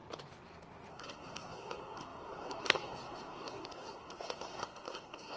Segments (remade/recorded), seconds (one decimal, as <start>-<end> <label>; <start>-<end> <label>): 0.0-0.9 recorded; 0.9-5.4 remade